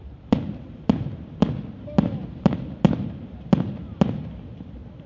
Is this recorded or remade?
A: recorded